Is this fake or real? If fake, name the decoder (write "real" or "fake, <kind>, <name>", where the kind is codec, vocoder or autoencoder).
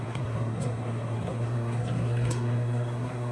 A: fake, codec, SNAC